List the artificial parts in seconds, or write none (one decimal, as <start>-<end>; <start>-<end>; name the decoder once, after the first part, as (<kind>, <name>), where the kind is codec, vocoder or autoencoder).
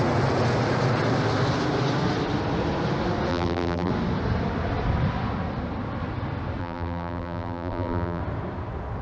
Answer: 3.3-3.9 (vocoder, BigVGAN v2); 6.6-8.2